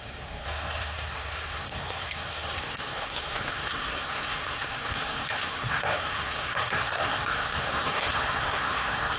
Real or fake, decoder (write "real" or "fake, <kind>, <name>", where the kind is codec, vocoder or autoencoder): fake, codec, SNAC